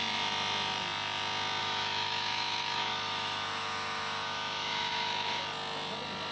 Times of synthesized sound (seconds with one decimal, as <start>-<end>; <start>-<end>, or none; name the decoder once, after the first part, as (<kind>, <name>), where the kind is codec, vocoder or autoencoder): 1.6-5.4 (autoencoder, DAC-VAE)